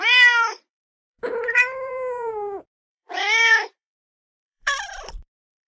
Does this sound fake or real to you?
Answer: fake